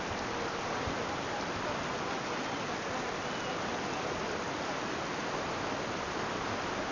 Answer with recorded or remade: recorded